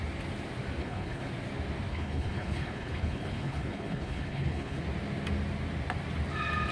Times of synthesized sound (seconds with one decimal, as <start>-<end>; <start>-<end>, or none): 0.8-1.3; 1.9-4.8